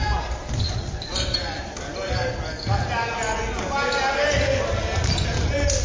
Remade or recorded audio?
recorded